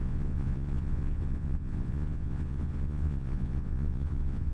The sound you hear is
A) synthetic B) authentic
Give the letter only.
A